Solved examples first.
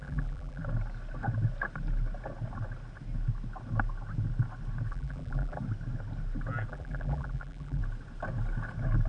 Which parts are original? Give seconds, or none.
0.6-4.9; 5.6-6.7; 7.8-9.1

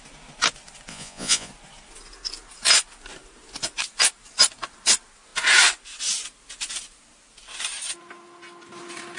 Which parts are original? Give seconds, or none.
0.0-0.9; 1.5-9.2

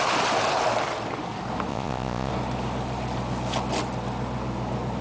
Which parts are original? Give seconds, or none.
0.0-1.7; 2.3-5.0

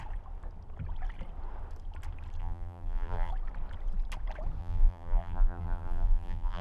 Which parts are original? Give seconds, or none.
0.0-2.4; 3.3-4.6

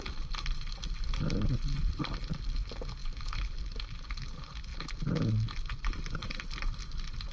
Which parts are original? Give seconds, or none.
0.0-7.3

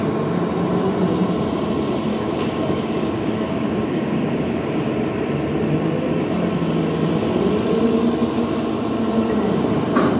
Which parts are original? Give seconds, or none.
0.0-2.1; 4.9-10.2

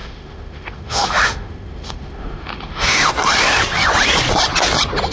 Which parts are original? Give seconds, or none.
3.1-5.1